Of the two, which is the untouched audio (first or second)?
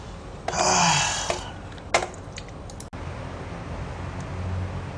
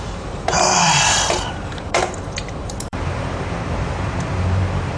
first